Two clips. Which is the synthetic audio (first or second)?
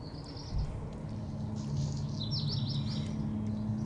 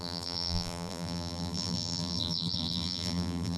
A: second